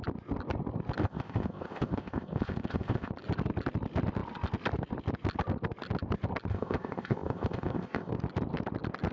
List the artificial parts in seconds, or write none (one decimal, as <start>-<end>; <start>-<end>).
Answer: 1.0-3.1; 6.5-8.1